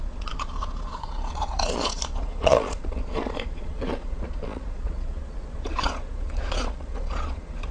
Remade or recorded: remade